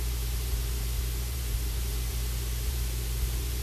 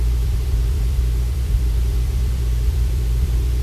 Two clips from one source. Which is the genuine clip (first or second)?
first